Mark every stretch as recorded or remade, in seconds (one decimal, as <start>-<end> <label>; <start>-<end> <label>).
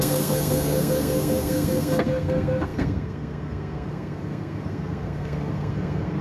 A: 0.0-6.2 remade